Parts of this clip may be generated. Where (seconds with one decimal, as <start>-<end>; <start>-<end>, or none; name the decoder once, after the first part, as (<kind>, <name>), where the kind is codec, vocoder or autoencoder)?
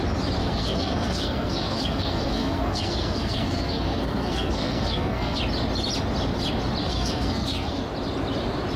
0.4-5.4 (codec, SNAC); 6.8-7.8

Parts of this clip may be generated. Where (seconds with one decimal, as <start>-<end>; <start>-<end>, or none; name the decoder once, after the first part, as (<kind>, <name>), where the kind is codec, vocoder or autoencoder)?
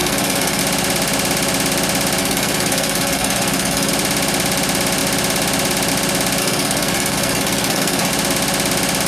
0.0-0.6 (codec, SNAC); 2.2-3.9; 6.4-8.1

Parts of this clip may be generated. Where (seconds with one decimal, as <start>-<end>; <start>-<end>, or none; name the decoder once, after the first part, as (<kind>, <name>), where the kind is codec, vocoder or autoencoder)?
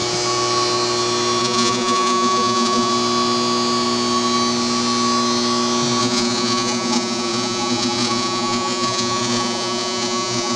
1.4-2.9 (vocoder, Vocos); 6.0-10.6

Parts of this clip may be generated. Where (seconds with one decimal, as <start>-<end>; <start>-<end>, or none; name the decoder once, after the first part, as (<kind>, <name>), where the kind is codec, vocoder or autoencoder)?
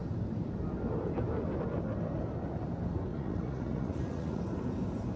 3.1-4.4 (vocoder, Vocos)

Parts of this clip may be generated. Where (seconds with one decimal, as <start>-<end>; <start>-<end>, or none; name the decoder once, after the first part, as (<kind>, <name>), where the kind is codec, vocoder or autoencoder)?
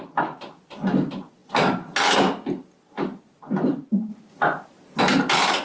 none